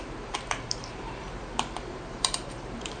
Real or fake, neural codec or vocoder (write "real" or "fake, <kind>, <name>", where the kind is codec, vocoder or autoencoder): fake, vocoder, BigVGAN v2